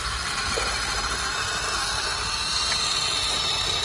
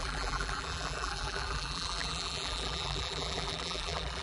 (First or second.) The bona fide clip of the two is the first